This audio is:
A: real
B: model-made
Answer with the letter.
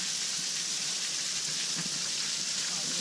A